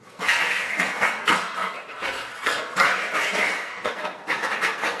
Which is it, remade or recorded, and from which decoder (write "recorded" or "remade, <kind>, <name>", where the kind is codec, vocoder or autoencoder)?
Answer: remade, codec, SNAC